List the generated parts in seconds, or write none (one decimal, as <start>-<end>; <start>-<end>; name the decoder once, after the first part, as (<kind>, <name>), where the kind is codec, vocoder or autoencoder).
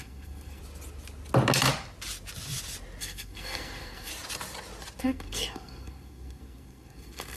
0.0-0.6 (codec, SNAC); 3.0-4.1; 5.0-7.4